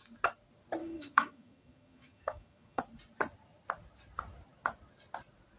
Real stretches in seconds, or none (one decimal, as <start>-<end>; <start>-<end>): 0.0-0.8; 2.8-5.6